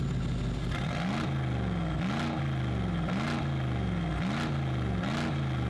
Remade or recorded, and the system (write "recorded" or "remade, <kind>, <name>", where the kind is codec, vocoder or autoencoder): recorded